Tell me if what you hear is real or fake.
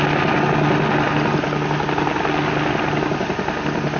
real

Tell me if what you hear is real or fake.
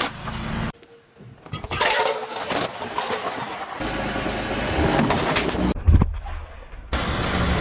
real